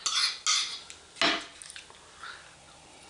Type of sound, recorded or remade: recorded